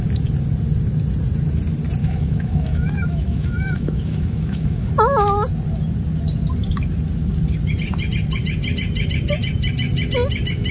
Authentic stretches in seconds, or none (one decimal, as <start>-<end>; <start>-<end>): 0.0-2.0; 4.9-10.7

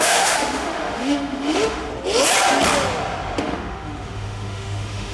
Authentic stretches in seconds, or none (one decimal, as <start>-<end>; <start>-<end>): 1.9-3.4

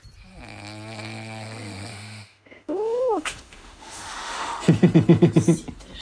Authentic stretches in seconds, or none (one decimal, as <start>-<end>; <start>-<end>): 0.0-1.9; 4.6-6.0

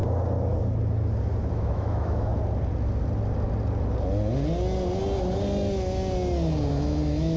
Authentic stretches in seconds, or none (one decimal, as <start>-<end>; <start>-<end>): 0.0-1.5; 2.3-6.7

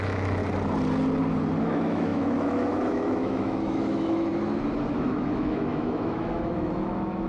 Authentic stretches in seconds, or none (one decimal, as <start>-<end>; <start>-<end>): 0.4-1.6; 4.3-4.9

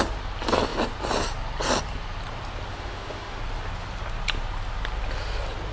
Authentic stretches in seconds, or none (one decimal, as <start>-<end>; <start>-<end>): 0.0-2.7; 3.4-5.7